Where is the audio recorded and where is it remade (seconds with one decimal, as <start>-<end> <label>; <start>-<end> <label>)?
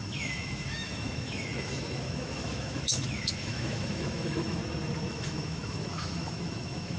0.0-4.6 remade; 4.6-5.1 recorded; 5.1-7.0 remade